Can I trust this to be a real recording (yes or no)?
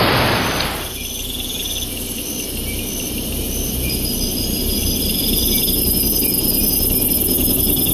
yes